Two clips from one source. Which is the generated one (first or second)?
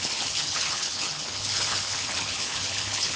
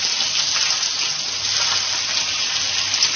first